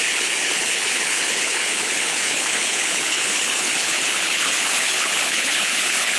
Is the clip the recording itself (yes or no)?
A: no